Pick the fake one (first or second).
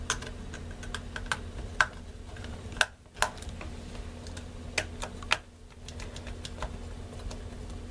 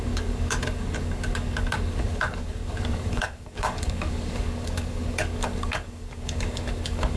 second